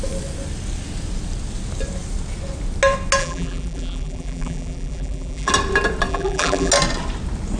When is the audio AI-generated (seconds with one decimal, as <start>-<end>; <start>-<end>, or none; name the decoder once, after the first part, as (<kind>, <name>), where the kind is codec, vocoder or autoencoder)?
3.2-5.5 (vocoder, BigVGAN v2); 6.1-6.7

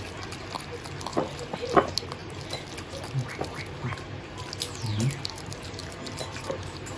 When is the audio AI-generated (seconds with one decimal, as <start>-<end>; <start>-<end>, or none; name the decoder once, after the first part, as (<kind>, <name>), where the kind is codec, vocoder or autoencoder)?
5.8-7.0 (vocoder, BigVGAN v2)

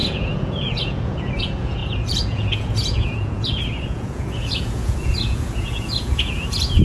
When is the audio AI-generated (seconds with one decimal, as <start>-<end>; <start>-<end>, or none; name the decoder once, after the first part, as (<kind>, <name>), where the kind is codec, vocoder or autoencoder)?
0.0-6.8 (vocoder, Vocos)

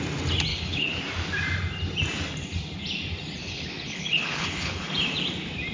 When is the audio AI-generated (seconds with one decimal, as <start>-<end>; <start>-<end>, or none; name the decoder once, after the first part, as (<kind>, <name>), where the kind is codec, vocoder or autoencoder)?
0.5-1.0 (codec, HILCodec); 3.4-4.8

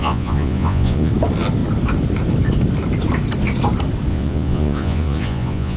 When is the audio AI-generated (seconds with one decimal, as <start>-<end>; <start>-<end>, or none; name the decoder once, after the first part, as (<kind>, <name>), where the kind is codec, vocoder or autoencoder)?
0.0-1.1 (vocoder, Vocos); 4.1-5.8

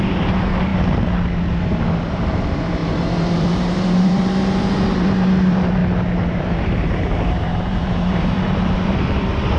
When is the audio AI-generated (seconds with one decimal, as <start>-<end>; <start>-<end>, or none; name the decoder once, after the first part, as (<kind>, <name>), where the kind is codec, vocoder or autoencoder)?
0.0-0.7 (vocoder, BigVGAN v2); 2.2-5.8; 6.3-9.6

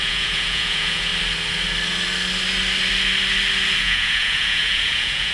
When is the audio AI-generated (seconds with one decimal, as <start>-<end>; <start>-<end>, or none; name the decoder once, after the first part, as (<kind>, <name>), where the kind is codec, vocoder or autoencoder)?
0.0-1.1 (vocoder, Vocos); 3.8-5.3